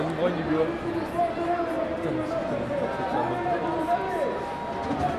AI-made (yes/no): no